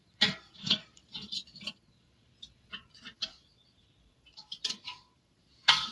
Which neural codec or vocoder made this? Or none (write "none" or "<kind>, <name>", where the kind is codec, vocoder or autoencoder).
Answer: vocoder, Vocos